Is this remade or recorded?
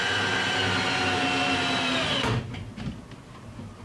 recorded